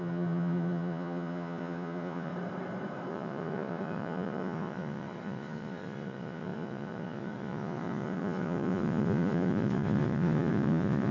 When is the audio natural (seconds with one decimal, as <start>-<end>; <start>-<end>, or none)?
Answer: 2.3-3.1